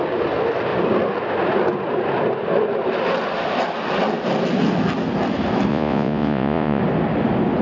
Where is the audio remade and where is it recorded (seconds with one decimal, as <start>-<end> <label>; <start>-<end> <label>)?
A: 0.0-5.7 recorded; 5.7-6.8 remade; 6.8-7.6 recorded